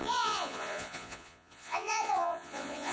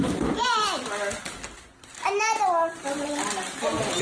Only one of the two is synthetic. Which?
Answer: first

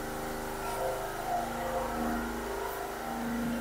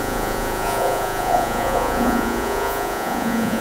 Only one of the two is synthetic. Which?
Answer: second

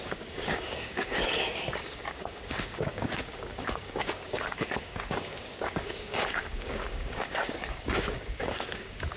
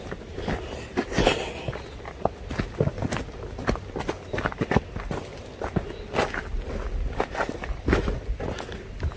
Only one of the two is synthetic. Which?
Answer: first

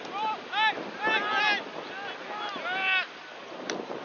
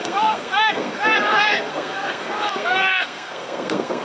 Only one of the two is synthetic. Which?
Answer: second